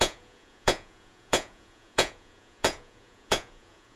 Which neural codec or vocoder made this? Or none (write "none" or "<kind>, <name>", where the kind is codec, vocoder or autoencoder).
vocoder, Vocos